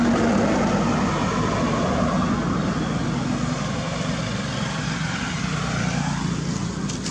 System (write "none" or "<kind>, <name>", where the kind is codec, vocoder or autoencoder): none